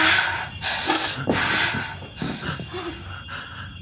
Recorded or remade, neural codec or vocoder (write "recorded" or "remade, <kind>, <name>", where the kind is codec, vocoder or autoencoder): recorded